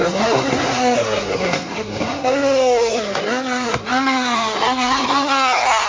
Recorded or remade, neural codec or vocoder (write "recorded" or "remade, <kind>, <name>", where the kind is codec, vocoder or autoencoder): remade, codec, SNAC